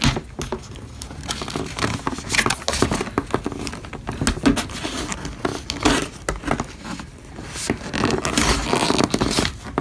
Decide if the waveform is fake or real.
real